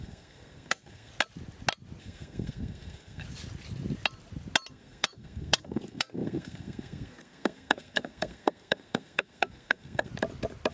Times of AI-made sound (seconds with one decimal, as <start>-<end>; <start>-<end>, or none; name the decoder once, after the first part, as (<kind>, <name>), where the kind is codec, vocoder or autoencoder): 0.0-1.1 (codec, SNAC); 2.0-3.2; 4.7-10.1